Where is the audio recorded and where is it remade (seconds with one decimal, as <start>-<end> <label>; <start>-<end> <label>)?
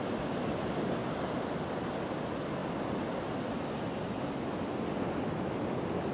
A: 0.0-6.1 recorded